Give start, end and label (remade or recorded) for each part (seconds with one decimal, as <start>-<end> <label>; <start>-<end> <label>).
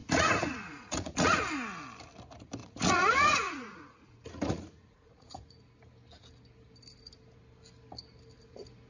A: 0.0-1.4 remade; 1.4-2.6 recorded; 2.6-5.6 remade; 5.6-8.9 recorded